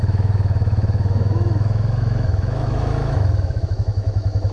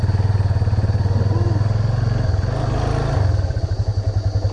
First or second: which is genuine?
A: second